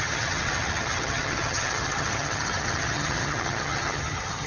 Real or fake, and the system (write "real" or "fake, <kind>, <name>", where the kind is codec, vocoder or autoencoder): fake, vocoder, HiFi-GAN